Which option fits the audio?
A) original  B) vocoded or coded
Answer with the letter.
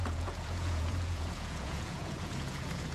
B